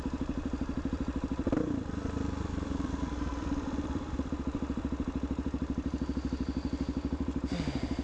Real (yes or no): no